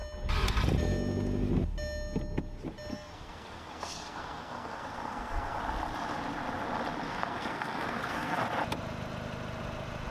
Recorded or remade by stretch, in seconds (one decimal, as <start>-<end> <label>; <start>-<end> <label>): 0.0-2.9 recorded; 2.9-5.6 remade; 5.6-7.1 recorded; 7.1-8.4 remade; 8.4-10.1 recorded